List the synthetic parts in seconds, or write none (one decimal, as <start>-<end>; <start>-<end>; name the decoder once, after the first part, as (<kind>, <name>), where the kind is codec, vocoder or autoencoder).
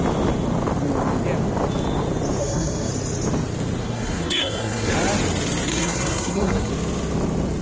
2.4-2.9 (codec, SNAC); 3.8-4.9; 5.7-6.7